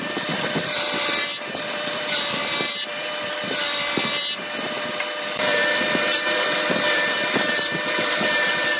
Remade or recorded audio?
remade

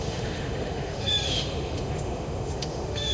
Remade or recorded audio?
remade